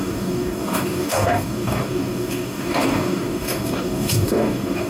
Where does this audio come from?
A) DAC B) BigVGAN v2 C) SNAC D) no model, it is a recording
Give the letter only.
A